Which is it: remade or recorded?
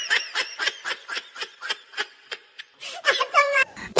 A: remade